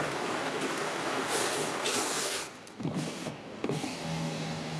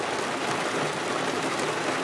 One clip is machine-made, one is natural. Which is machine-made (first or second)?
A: first